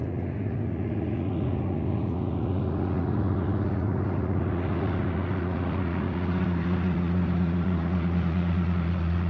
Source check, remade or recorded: remade